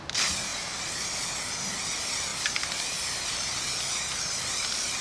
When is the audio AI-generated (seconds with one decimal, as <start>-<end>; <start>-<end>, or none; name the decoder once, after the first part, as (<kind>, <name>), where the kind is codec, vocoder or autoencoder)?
none

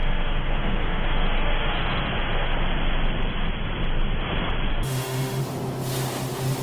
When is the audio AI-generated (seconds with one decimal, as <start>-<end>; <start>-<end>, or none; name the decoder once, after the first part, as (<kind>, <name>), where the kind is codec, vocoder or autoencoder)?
0.0-2.1 (autoencoder, DAC-VAE); 4.7-5.4